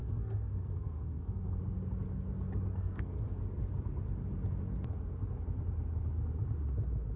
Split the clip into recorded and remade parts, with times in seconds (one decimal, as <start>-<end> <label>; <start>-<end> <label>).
0.0-1.6 remade; 1.6-2.7 recorded; 2.7-3.4 remade; 3.4-7.2 recorded